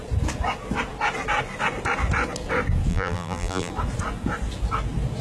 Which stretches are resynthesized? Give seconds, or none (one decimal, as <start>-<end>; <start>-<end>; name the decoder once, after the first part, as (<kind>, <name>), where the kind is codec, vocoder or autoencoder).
2.9-3.7 (vocoder, BigVGAN v2)